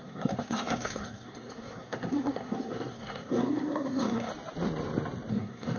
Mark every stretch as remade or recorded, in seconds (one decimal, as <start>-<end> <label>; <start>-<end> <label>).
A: 0.0-4.3 remade; 4.3-5.3 recorded; 5.3-5.8 remade